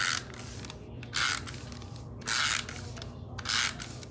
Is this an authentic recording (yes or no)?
yes